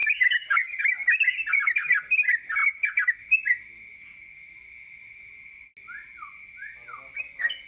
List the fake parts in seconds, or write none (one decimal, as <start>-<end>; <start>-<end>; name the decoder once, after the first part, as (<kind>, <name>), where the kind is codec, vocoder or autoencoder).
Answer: 0.0-0.8 (codec, DAC)